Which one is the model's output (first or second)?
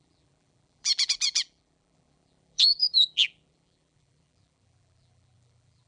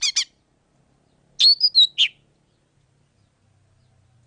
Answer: first